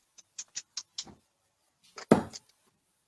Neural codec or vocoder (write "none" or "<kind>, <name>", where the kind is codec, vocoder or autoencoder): none